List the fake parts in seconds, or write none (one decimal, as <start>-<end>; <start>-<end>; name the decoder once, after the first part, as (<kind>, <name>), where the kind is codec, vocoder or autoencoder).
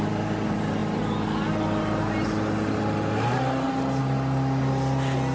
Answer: none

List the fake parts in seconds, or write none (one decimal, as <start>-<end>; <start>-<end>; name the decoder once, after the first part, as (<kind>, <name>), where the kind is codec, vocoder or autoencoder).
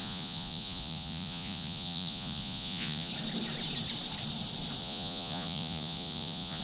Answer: 0.0-3.1 (vocoder, Vocos); 4.8-6.6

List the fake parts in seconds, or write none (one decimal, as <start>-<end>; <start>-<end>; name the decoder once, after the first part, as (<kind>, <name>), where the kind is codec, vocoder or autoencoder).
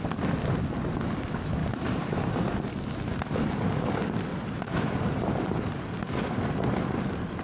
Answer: 1.6-2.7 (vocoder, BigVGAN v2); 4.3-6.2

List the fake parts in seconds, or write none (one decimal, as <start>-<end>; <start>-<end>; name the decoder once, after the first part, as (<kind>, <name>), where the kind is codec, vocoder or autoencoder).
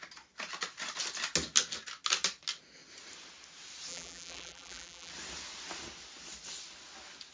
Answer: 3.9-5.1 (vocoder, BigVGAN v2)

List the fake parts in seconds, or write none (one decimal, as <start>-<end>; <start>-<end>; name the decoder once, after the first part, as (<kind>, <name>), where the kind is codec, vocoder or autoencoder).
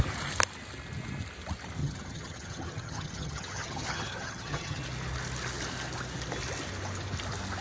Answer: 1.8-4.8 (vocoder, HiFi-GAN)